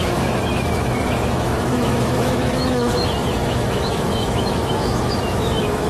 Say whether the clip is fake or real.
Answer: fake